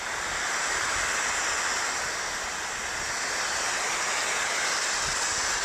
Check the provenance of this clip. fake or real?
real